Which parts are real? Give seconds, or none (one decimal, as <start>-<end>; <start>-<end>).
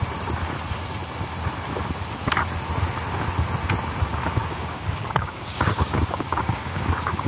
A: 0.0-4.4